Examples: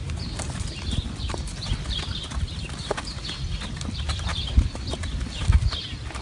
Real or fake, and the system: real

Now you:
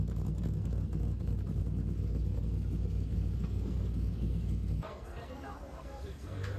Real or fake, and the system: fake, codec, SNAC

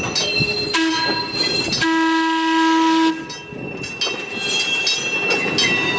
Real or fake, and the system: real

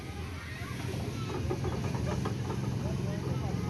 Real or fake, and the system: real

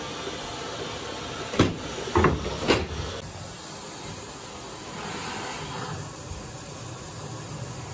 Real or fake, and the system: real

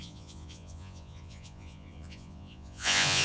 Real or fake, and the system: fake, vocoder, Vocos